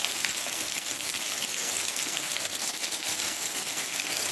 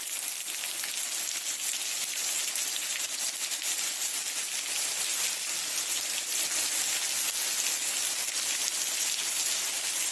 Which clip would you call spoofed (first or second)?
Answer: first